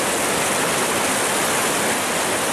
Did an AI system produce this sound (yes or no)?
no